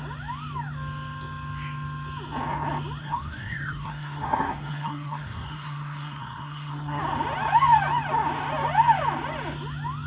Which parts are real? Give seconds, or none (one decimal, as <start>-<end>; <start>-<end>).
0.0-3.0; 7.0-10.1

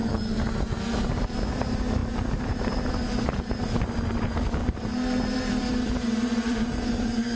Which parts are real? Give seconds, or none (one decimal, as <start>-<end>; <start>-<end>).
0.0-1.2

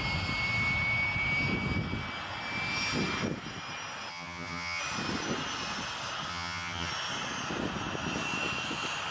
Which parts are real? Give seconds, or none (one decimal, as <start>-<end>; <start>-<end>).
0.0-4.1; 4.8-6.3; 6.9-9.1

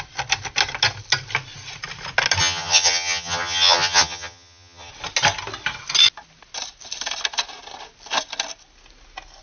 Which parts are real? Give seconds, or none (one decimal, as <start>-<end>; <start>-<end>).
0.0-2.4; 4.9-9.4

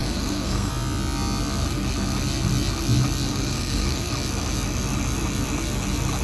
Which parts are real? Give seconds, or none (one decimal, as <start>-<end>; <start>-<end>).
0.7-3.3; 4.1-6.2